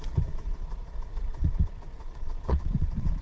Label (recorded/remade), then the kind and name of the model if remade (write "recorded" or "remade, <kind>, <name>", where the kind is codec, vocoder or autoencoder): remade, vocoder, Vocos